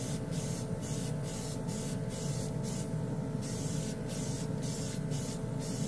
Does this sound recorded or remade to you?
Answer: recorded